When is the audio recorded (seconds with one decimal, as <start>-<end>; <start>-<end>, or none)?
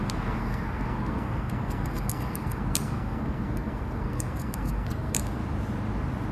5.4-6.3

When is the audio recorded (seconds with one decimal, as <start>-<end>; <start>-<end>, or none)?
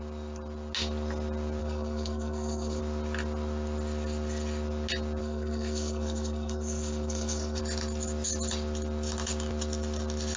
0.0-1.6; 2.8-5.2; 7.6-10.4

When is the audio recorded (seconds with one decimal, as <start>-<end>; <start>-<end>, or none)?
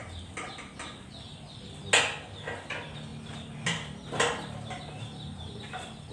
0.0-6.1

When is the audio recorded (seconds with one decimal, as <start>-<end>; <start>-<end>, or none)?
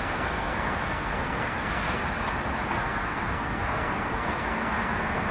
2.0-2.7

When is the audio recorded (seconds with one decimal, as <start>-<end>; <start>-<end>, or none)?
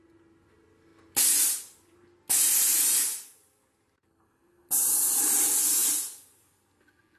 0.0-7.2